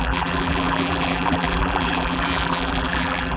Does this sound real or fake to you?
fake